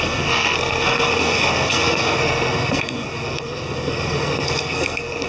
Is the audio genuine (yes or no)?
no